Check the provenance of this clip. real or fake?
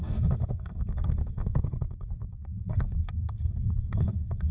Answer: fake